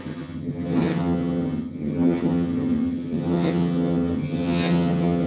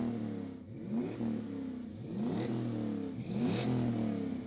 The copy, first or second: first